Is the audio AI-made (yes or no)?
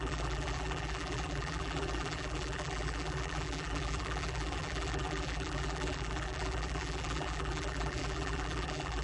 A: yes